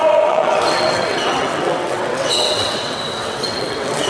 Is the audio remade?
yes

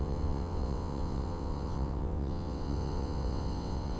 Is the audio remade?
yes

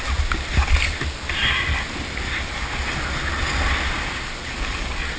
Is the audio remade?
no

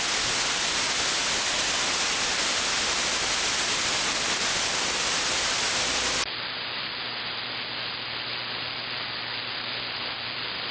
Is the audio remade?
no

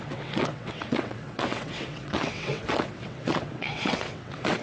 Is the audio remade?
yes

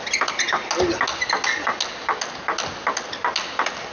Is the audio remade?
no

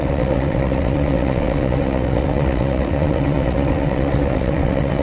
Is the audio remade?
yes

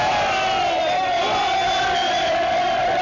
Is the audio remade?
no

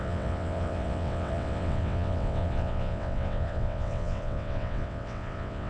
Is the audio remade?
yes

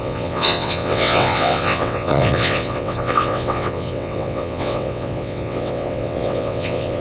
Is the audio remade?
yes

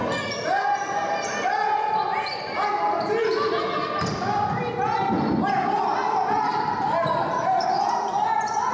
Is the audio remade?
no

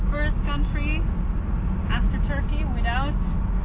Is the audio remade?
no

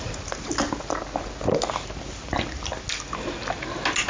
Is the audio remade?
no